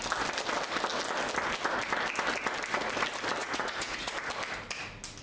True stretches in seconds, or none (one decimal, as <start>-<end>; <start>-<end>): 0.0-3.4; 4.1-5.2